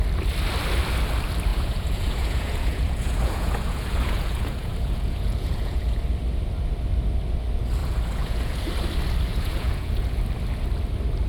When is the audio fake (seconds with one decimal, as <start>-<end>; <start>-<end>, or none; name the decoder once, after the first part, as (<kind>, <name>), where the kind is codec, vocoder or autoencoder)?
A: 1.5-6.0 (vocoder, Vocos); 7.8-8.7; 9.3-10.2